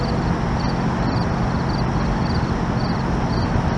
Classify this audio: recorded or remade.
recorded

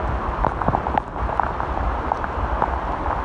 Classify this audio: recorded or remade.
recorded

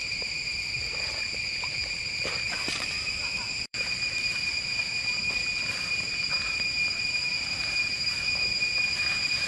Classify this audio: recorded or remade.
remade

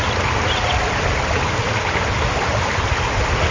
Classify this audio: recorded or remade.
recorded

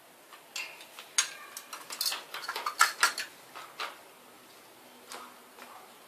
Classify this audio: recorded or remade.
recorded